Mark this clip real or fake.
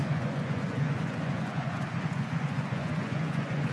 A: fake